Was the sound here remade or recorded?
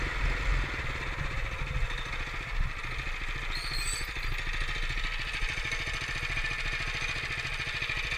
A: recorded